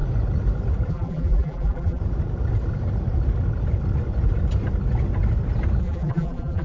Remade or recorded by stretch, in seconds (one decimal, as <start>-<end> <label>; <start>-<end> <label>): 0.0-0.9 recorded; 0.9-2.0 remade; 2.0-5.8 recorded; 5.8-6.6 remade